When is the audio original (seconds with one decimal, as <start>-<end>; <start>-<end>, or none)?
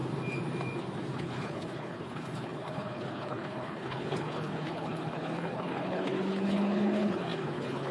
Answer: 0.0-1.2